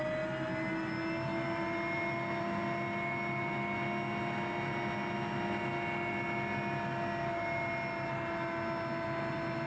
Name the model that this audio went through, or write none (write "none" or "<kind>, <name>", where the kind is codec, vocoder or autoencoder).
none